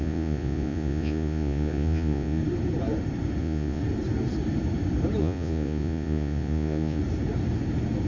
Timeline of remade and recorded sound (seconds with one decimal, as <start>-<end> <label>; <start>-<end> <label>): 0.0-2.4 remade; 2.4-3.4 recorded; 3.4-3.8 remade; 3.8-5.2 recorded; 5.2-7.0 remade; 7.0-8.1 recorded